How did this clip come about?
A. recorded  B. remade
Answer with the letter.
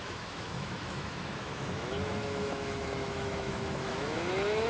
B